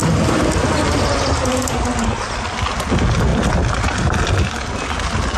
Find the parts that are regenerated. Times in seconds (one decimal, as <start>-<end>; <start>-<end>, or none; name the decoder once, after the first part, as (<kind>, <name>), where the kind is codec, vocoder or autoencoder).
none